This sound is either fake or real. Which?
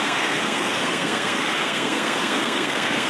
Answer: fake